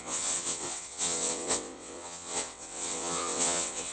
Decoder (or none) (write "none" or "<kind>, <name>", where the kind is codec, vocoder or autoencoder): vocoder, WaveNeXt